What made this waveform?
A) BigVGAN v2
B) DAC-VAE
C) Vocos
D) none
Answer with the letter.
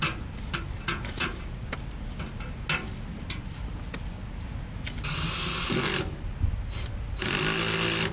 D